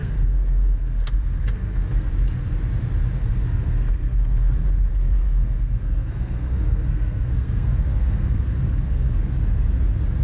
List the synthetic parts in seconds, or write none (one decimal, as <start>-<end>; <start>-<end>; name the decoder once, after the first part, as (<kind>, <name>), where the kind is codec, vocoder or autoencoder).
0.0-2.1 (codec, SNAC); 3.2-4.5; 4.9-9.3